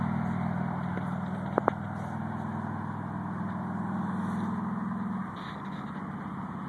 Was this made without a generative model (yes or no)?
yes